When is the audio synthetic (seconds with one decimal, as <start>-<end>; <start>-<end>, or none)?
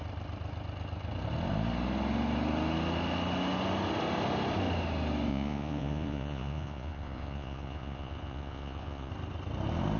5.3-9.1